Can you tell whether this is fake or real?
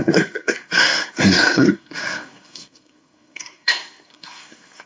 fake